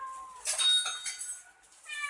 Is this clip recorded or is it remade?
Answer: recorded